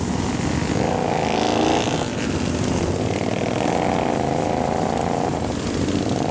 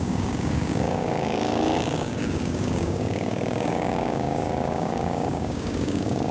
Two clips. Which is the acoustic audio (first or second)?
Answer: first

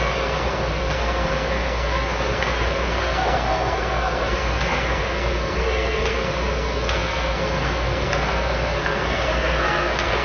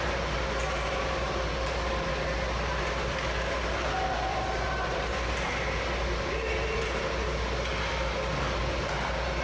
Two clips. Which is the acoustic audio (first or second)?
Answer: second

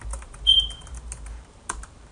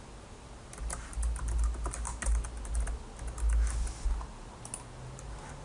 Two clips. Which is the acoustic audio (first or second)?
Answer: second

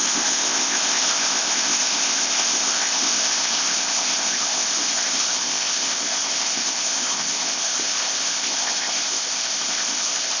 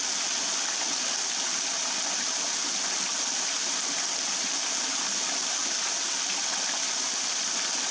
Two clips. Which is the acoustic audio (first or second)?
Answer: second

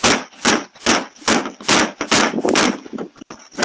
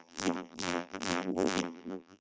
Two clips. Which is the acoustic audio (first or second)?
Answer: first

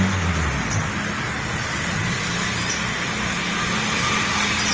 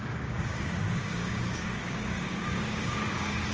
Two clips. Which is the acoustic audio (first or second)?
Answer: first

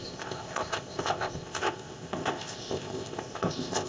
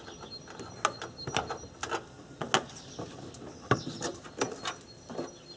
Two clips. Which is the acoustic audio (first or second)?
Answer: second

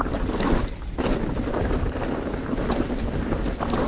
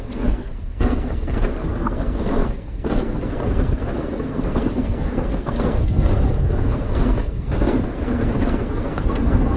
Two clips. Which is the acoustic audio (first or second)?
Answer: first